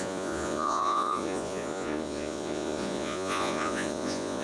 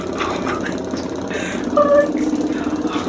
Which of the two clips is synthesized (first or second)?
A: first